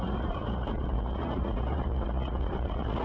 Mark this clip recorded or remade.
remade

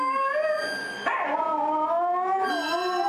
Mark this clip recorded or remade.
recorded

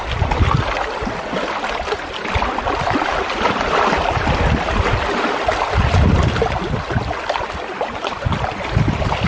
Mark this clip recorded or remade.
recorded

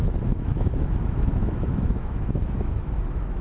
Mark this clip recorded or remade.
remade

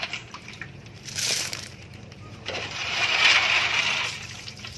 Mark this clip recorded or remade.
remade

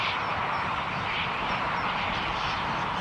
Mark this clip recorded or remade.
recorded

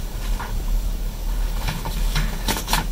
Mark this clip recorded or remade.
remade